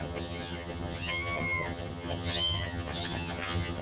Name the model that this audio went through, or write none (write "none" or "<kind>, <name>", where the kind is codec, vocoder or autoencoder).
vocoder, HiFi-GAN